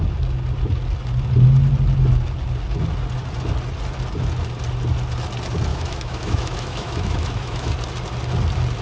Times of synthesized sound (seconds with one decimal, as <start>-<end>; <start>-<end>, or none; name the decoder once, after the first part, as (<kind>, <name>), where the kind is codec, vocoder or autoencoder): 5.7-7.7 (autoencoder, DAC-VAE)